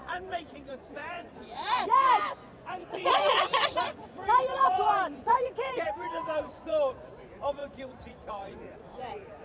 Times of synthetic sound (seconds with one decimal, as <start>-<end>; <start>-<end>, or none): 0.0-9.4